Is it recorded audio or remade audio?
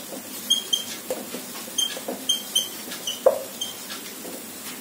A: recorded